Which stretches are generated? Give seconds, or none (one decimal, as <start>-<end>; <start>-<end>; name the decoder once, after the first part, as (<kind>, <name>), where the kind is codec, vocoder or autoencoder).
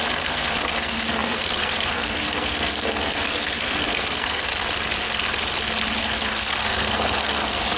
0.0-4.5 (codec, SNAC); 6.0-7.8